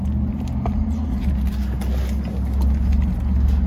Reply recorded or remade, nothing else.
recorded